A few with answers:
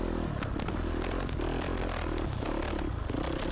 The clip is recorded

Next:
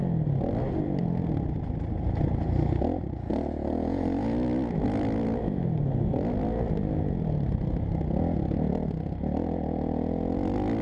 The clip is recorded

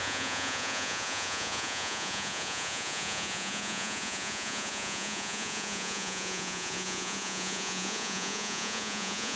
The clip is remade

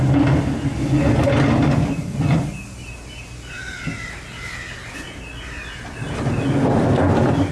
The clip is recorded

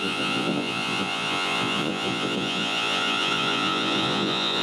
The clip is remade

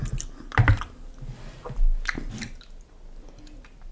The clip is recorded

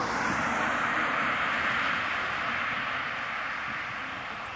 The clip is recorded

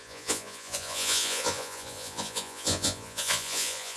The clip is remade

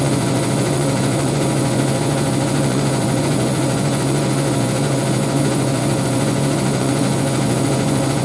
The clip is remade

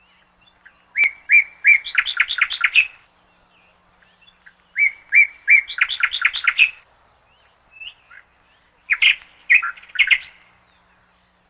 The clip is recorded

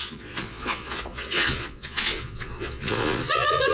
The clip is remade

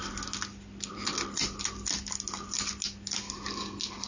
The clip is recorded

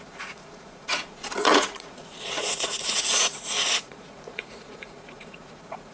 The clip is remade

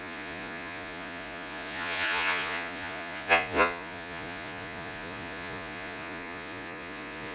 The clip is remade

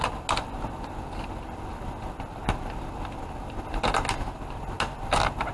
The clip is recorded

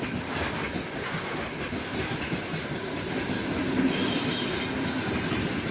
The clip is recorded